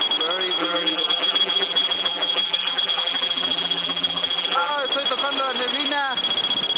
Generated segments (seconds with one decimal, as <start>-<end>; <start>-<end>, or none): 0.6-4.7